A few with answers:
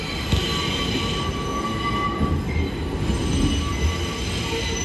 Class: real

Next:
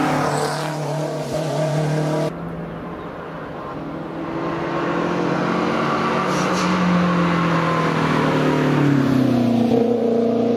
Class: real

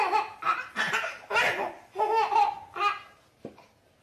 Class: real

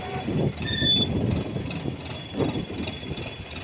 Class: real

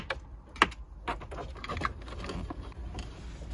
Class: real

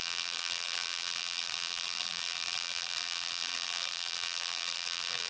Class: fake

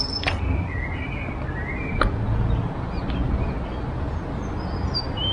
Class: real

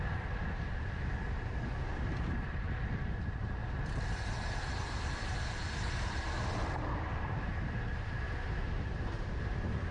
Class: fake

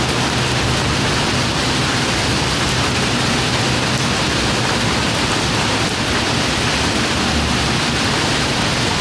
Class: real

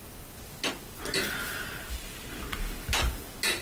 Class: real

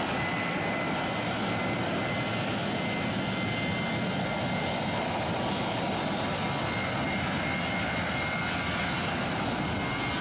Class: real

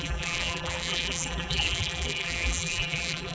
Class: fake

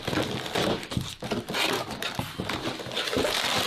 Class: real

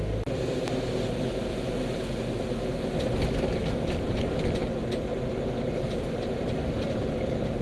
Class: real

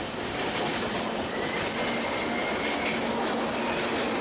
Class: real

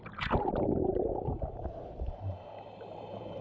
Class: fake